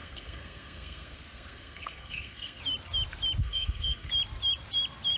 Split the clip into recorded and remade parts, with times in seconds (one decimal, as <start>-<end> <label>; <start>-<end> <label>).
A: 0.0-2.6 remade; 2.6-3.4 recorded; 3.4-4.1 remade; 4.1-5.2 recorded